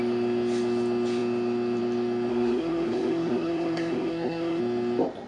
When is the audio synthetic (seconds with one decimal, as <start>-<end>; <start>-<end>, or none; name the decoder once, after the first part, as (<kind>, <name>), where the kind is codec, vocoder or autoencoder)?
2.3-4.6 (codec, SNAC)